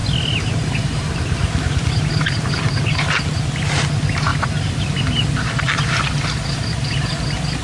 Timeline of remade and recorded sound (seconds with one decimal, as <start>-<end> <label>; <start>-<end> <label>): 0.0-7.6 recorded

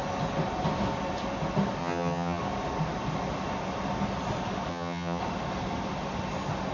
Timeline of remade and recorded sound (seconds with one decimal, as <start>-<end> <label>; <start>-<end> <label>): 0.0-1.8 recorded; 1.8-2.4 remade; 2.4-4.7 recorded; 4.7-5.2 remade; 5.2-6.7 recorded

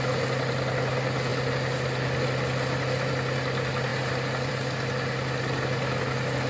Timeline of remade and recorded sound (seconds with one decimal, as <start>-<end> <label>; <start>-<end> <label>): 0.0-6.5 recorded

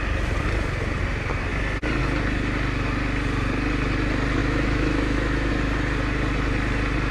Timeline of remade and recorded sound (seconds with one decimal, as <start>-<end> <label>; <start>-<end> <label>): 0.0-4.4 recorded; 4.4-5.5 remade; 5.5-7.1 recorded

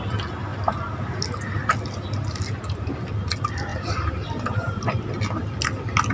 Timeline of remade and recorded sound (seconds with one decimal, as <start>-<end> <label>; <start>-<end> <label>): 0.0-3.7 recorded; 3.7-5.1 remade; 5.1-6.1 recorded

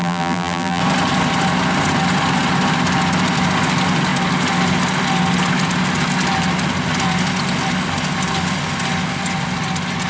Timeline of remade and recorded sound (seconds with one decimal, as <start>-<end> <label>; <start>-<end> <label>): 0.0-0.8 remade; 0.8-10.1 recorded

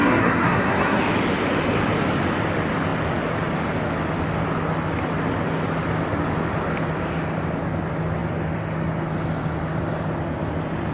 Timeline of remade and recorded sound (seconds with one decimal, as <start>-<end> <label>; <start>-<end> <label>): 0.0-1.0 remade; 1.0-10.9 recorded